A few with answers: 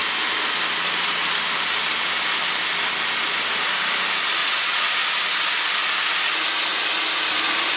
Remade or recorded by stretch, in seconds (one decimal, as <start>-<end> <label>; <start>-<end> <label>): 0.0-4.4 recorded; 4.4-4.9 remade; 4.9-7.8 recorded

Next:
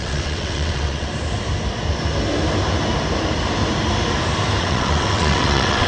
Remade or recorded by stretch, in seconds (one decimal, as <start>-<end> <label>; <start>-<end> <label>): 0.0-1.1 remade; 1.1-4.6 recorded; 4.6-5.9 remade

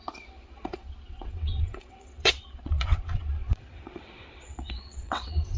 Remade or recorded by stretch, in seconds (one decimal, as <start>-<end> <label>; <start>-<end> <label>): 0.0-5.6 remade